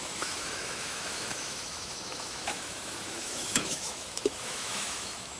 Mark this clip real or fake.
fake